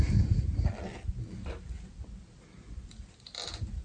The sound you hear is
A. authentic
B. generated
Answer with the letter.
A